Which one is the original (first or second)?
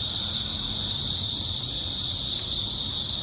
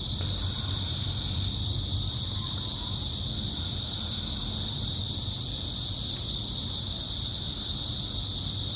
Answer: second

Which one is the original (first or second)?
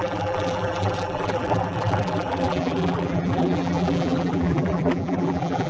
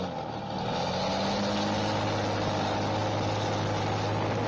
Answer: second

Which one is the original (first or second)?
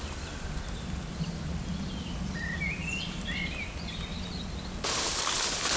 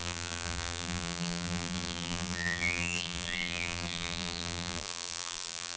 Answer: first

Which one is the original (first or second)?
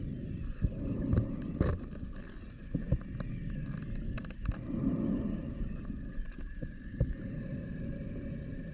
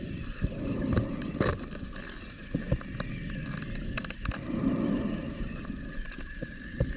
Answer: first